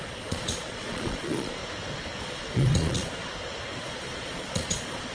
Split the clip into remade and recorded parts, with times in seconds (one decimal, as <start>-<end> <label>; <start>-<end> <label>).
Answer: 0.0-1.6 remade; 1.6-2.2 recorded; 2.2-3.3 remade; 3.3-3.8 recorded; 3.8-5.1 remade